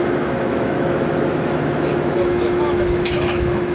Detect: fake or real fake